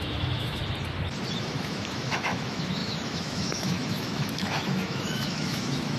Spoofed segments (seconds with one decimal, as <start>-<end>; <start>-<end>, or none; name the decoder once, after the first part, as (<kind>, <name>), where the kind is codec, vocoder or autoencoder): 0.0-0.6 (autoencoder, DAC-VAE); 1.4-6.0